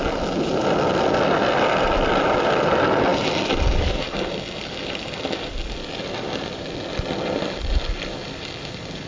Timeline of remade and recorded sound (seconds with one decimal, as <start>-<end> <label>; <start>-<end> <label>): 0.0-9.1 recorded